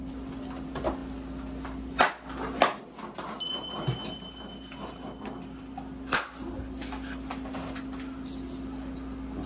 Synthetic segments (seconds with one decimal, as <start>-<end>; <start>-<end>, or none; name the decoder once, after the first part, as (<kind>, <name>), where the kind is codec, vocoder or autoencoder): none